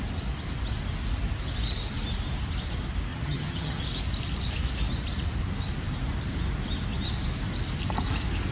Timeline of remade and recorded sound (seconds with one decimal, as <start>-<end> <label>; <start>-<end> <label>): 0.0-3.1 recorded; 3.1-3.8 remade; 3.8-8.5 recorded